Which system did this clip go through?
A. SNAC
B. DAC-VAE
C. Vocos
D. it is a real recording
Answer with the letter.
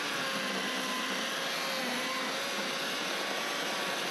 D